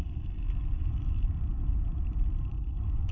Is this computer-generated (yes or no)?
yes